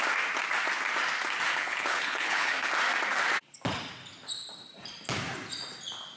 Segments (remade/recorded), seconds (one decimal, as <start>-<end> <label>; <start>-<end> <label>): 0.0-1.5 recorded; 1.5-2.7 remade; 2.7-6.2 recorded